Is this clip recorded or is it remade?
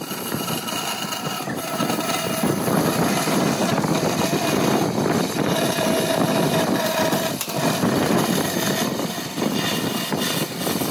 remade